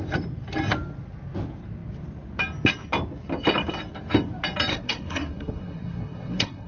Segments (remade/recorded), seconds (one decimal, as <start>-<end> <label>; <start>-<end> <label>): 0.0-4.7 recorded; 4.7-6.7 remade